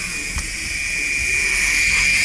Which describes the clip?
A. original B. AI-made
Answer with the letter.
A